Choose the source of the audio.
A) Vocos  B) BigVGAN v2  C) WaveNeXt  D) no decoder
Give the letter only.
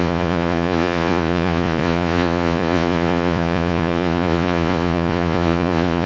A